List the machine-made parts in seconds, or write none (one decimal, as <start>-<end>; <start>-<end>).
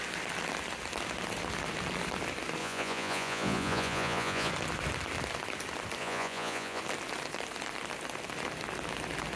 2.6-4.5; 6.0-6.8